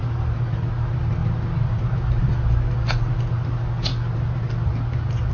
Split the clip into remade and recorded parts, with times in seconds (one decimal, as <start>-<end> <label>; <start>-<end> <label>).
0.0-5.3 recorded